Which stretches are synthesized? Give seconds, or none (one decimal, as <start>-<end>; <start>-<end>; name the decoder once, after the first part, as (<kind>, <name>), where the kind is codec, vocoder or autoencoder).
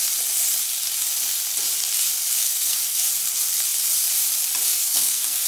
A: 2.4-3.1 (codec, SNAC); 4.7-5.5